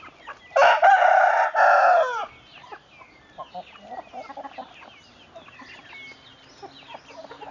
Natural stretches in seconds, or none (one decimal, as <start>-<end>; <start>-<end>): 0.0-7.5